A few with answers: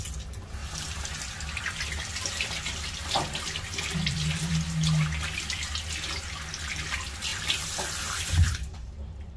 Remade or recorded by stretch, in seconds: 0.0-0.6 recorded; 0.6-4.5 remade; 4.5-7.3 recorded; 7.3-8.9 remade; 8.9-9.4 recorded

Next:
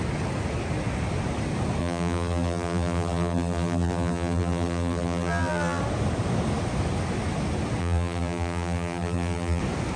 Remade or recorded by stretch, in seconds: 0.0-1.8 recorded; 1.8-5.8 remade; 5.8-7.8 recorded; 7.8-9.6 remade; 9.6-10.0 recorded

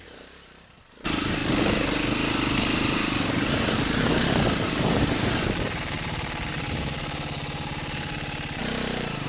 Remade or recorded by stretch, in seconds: 0.0-1.4 remade; 1.4-2.3 recorded; 2.3-9.3 remade